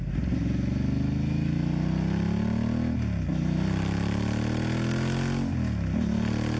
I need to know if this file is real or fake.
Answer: real